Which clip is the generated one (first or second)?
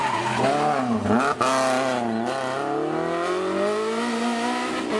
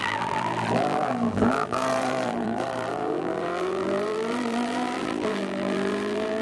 second